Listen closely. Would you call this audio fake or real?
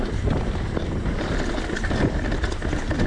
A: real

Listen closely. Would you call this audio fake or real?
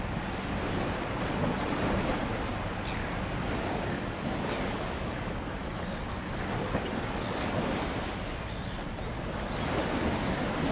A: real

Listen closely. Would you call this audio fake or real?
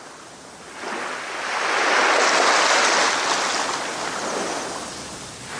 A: real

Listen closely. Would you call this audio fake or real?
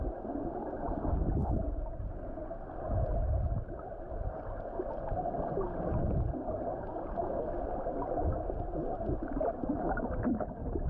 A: real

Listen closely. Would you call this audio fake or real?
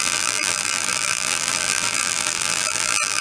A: fake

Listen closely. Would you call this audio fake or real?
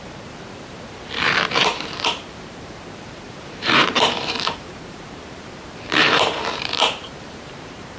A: fake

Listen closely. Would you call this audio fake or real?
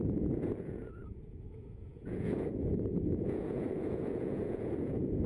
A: fake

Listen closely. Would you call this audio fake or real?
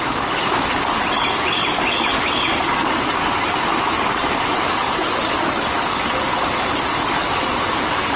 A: real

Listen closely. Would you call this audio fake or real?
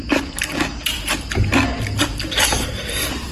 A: real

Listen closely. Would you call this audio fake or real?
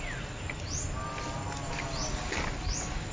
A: real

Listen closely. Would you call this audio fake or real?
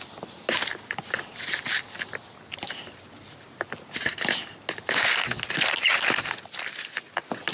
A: real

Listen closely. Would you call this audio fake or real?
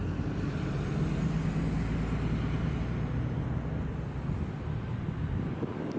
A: real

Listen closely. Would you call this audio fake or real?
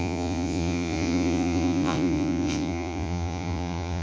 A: fake